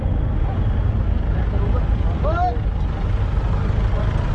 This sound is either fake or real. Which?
real